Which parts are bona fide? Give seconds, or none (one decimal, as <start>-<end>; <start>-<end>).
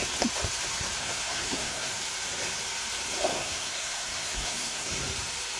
0.0-1.0; 1.9-3.3; 4.9-5.6